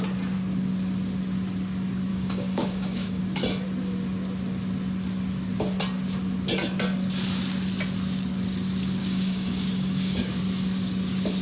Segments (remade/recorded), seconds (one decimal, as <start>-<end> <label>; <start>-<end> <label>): 0.0-2.1 recorded; 2.1-3.2 remade; 3.2-9.0 recorded; 9.0-10.4 remade; 10.4-11.4 recorded